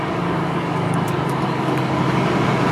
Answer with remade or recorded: remade